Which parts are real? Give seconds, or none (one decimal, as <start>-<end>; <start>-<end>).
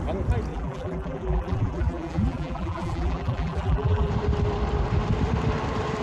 0.0-0.5; 4.1-6.0